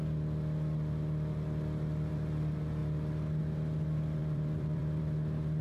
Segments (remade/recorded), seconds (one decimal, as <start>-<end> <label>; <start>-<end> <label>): 0.0-4.2 recorded; 4.2-5.0 remade; 5.0-5.6 recorded

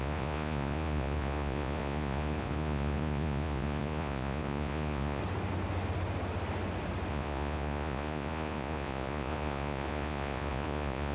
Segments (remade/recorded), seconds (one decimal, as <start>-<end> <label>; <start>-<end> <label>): 0.0-5.2 remade; 5.2-7.1 recorded; 7.1-11.1 remade

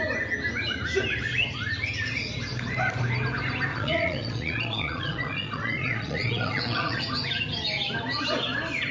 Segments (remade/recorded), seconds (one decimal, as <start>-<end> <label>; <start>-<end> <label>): 0.0-3.7 recorded; 3.7-7.0 remade; 7.0-8.9 recorded

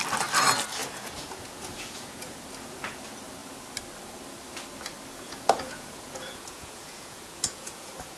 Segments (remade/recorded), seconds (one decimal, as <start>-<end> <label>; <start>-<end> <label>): 0.0-0.8 recorded; 0.8-2.4 remade; 2.4-5.1 recorded; 5.1-8.2 remade

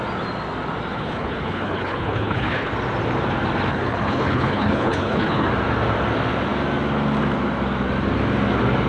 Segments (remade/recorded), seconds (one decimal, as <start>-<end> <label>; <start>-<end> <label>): 0.0-0.9 recorded; 0.9-2.7 remade; 2.7-3.7 recorded; 3.7-5.5 remade; 5.5-8.9 recorded

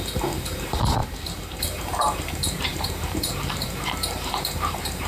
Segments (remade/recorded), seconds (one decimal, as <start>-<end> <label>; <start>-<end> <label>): 0.0-5.1 remade

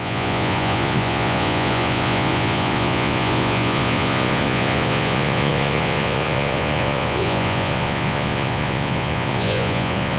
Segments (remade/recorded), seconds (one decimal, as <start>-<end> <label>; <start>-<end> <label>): 0.0-10.2 remade